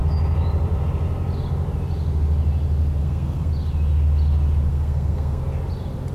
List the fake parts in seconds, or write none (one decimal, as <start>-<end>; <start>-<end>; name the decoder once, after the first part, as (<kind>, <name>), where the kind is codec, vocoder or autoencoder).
3.0-3.5 (codec, SNAC); 4.7-5.4